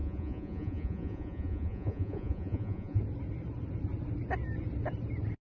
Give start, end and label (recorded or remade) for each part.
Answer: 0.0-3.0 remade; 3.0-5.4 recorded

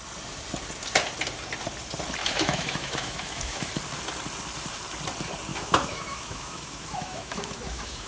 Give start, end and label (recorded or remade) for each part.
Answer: 0.0-2.2 recorded; 2.2-3.7 remade; 3.7-5.5 recorded; 5.5-8.1 remade

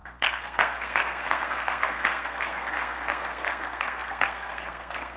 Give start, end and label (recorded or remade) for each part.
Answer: 0.0-5.2 remade

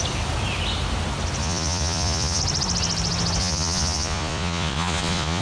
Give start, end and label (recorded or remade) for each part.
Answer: 0.0-1.4 recorded; 1.4-2.4 remade; 2.4-3.4 recorded; 3.4-5.4 remade

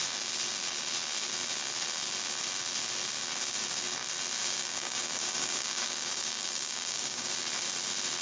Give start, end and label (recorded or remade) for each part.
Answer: 0.0-4.4 recorded; 4.4-7.3 remade; 7.3-8.2 recorded

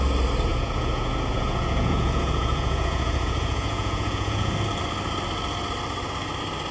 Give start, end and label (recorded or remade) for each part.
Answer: 0.0-0.5 recorded; 0.5-4.5 remade; 4.5-6.7 recorded

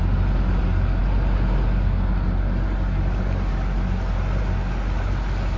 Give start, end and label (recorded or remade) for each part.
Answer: 0.0-5.6 recorded